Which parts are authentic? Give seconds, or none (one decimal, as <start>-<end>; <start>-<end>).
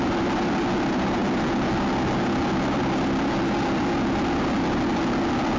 0.0-5.6